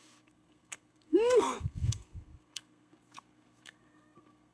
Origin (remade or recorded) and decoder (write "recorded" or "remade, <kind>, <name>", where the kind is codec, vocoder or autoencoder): remade, codec, SNAC